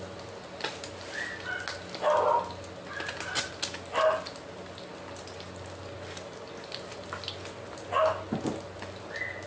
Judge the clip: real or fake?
real